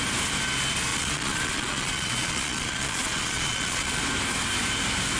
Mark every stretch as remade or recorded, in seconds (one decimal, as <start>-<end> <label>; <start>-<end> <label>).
0.0-0.9 recorded; 0.9-4.0 remade; 4.0-5.2 recorded